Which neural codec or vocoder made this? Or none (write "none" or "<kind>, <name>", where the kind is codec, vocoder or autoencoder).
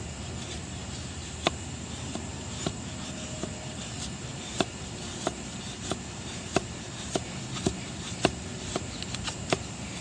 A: vocoder, BigVGAN v2